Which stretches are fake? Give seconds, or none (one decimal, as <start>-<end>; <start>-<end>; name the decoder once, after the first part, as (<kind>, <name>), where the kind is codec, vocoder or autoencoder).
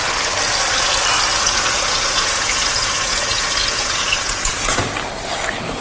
1.3-4.8 (vocoder, Vocos)